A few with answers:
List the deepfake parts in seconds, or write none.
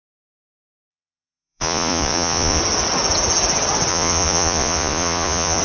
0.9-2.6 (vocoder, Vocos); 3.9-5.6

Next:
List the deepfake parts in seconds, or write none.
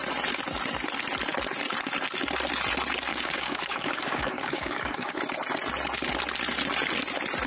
3.1-5.2 (codec, DAC)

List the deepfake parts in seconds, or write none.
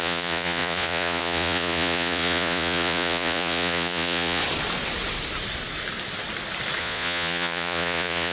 0.0-4.4 (vocoder, Vocos); 6.8-8.3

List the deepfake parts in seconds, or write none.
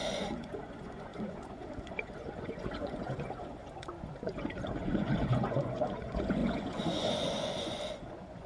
0.0-8.5 (vocoder, Vocos)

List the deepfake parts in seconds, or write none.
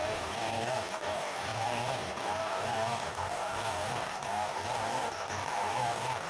0.0-6.3 (codec, DAC)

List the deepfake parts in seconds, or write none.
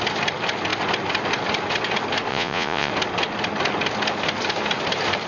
2.3-2.9 (vocoder, Vocos)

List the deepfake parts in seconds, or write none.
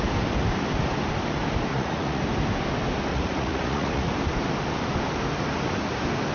1.7-2.2 (vocoder, Vocos); 3.1-4.1